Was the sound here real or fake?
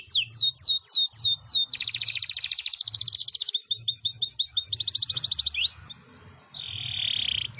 real